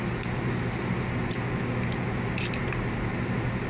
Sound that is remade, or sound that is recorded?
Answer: recorded